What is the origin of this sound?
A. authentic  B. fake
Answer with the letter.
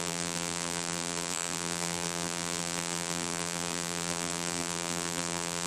B